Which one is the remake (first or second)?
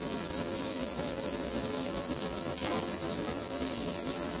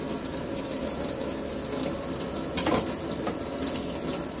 first